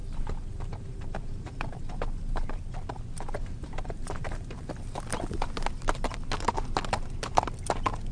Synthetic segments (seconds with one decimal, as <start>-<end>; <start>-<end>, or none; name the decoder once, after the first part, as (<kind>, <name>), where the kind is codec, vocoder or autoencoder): 0.0-2.5 (vocoder, BigVGAN v2); 3.4-4.8